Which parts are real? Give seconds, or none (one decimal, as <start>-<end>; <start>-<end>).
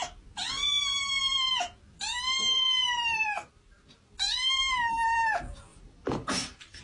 0.0-2.8; 3.5-5.7